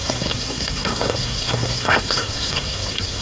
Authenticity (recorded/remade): remade